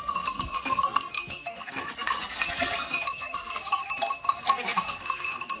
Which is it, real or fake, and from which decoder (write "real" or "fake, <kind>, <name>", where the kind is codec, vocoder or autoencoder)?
fake, codec, SNAC